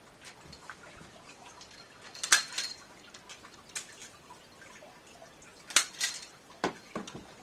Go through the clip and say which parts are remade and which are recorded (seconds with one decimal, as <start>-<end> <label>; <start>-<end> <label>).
0.0-4.0 recorded; 4.0-6.9 remade; 6.9-7.4 recorded

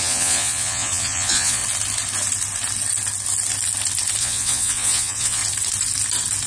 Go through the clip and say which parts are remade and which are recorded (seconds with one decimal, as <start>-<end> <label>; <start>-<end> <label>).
0.0-1.6 remade; 1.6-4.2 recorded; 4.2-5.4 remade; 5.4-6.5 recorded

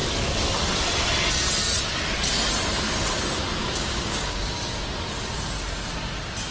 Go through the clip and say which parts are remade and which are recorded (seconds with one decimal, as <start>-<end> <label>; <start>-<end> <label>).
0.0-3.6 recorded; 3.6-4.5 remade; 4.5-6.5 recorded

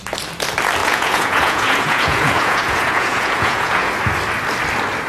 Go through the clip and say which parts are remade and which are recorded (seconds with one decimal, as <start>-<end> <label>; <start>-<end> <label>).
0.0-0.8 recorded; 0.8-3.9 remade; 3.9-5.1 recorded